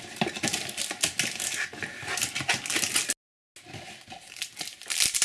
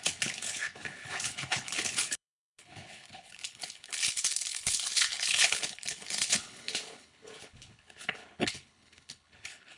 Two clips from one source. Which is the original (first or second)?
first